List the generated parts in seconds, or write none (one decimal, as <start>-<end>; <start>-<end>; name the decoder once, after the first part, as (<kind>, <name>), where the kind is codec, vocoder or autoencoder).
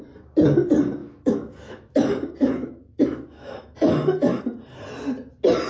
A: 1.0-4.4 (autoencoder, DAC-VAE)